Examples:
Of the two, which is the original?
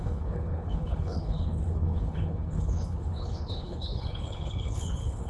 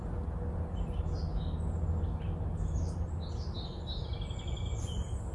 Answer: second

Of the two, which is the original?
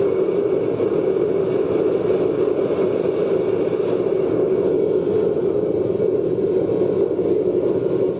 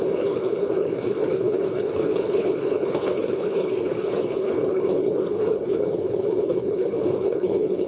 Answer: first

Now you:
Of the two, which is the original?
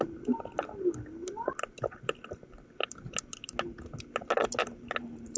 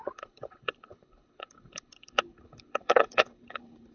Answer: first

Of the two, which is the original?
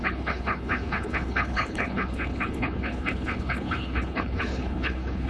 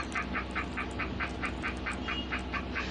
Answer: second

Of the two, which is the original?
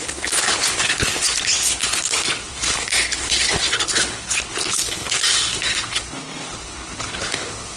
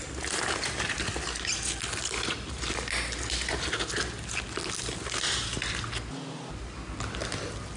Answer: second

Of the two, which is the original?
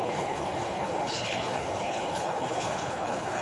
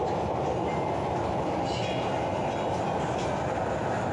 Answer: second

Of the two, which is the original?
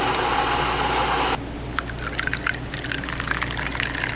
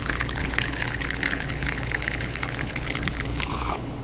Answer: first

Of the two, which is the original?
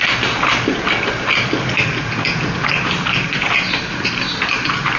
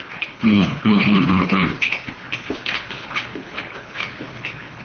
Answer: first